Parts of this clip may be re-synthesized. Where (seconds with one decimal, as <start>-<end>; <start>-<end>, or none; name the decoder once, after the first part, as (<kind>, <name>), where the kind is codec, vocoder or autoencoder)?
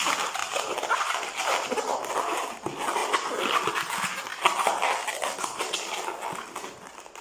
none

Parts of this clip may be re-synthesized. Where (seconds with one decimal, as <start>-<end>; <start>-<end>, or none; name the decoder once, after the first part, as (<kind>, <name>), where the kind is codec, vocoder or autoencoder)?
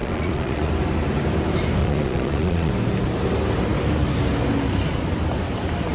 0.0-0.7 (vocoder, Vocos); 1.8-2.7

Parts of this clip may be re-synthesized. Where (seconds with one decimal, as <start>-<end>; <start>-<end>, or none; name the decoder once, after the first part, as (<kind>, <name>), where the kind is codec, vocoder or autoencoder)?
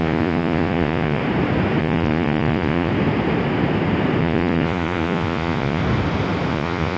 0.0-1.2 (vocoder, Vocos); 1.8-2.9; 4.2-5.8; 6.5-7.0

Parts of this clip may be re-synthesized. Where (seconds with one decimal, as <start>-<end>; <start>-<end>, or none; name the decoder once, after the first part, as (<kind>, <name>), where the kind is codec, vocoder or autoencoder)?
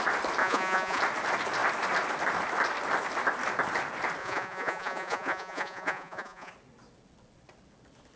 0.4-1.0 (vocoder, Vocos); 4.2-6.5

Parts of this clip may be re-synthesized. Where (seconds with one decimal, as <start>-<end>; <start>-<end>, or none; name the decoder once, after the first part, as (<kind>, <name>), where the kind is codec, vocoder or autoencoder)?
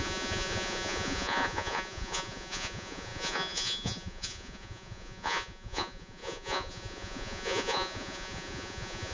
0.0-9.1 (vocoder, Vocos)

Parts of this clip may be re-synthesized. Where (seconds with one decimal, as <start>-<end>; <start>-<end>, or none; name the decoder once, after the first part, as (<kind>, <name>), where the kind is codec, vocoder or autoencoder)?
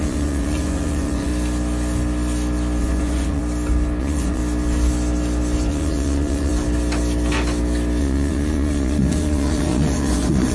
0.0-1.3 (vocoder, Vocos); 2.8-3.4; 4.0-4.4; 5.7-6.5; 8.0-10.5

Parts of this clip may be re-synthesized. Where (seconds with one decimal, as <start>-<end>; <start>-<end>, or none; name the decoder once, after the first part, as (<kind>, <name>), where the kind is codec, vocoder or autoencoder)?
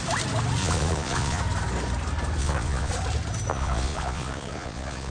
0.6-1.4 (vocoder, Vocos); 2.4-2.9; 3.5-5.1